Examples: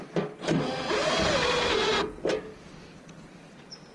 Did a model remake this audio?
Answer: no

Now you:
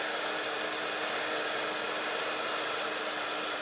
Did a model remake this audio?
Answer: no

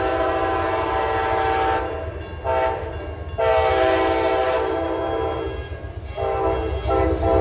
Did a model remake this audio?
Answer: no